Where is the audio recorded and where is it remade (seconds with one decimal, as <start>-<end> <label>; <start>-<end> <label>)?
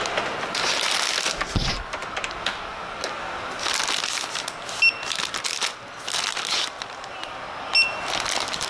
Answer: 0.0-8.7 recorded